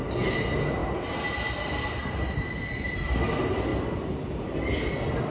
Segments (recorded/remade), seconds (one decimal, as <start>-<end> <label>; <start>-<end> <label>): 0.0-5.3 recorded